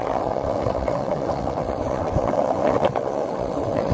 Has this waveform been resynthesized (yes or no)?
yes